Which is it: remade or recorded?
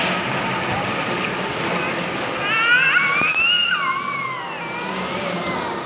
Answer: recorded